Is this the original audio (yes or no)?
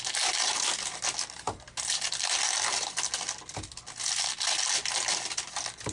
yes